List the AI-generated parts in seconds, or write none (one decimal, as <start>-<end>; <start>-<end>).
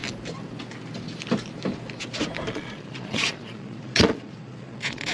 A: 2.5-5.1